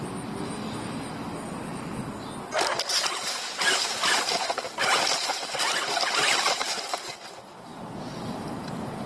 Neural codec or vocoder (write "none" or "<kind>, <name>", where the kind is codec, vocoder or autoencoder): none